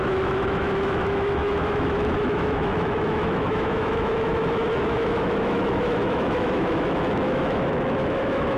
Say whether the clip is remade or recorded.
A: remade